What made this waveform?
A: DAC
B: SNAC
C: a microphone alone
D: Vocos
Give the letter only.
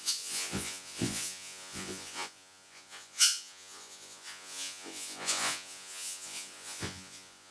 D